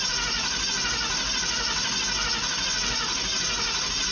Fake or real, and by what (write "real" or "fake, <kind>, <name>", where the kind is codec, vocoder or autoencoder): real